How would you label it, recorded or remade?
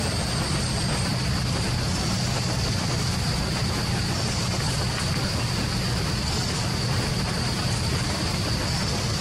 remade